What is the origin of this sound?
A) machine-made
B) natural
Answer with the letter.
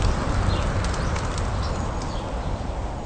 B